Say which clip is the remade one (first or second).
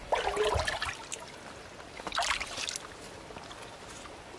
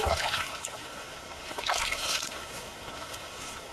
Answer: second